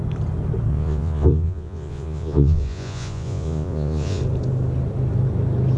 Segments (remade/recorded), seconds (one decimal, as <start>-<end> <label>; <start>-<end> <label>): 0.0-0.7 recorded; 0.7-4.2 remade; 4.2-5.8 recorded